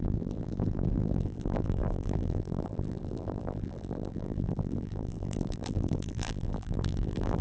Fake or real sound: fake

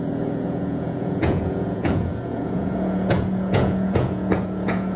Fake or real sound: fake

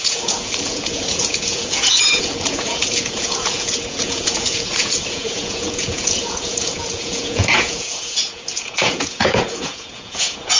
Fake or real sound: fake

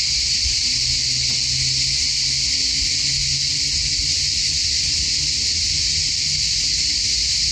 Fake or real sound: real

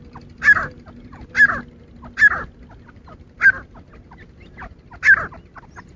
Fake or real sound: real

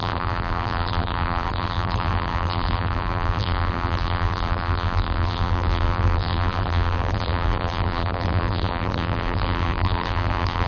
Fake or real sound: fake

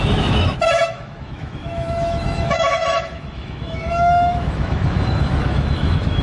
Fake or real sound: fake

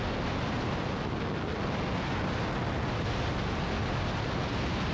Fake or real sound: real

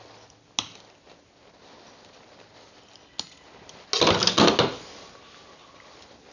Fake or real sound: real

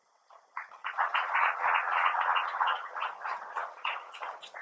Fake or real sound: fake